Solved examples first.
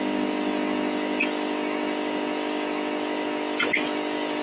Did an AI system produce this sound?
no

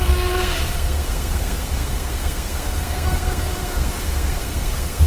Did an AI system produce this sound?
yes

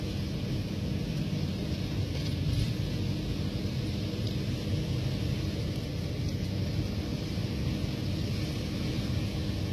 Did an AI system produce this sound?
no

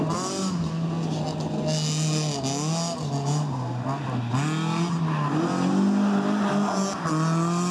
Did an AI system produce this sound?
no